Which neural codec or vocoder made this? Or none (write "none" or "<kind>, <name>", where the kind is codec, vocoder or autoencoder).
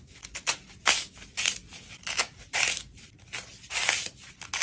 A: none